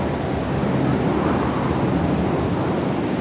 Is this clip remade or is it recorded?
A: recorded